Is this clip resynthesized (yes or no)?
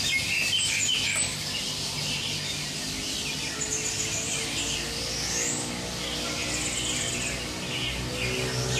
no